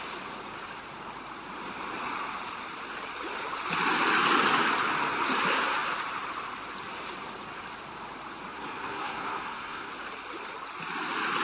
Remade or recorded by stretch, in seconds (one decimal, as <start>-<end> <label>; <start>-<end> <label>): 0.0-8.5 recorded; 8.5-9.9 remade; 9.9-11.4 recorded